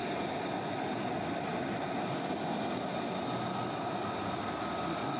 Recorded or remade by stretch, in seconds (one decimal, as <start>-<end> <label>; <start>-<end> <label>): 0.0-5.2 recorded